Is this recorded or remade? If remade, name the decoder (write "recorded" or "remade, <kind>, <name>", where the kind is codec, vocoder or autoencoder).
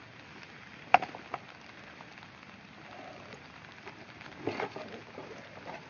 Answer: recorded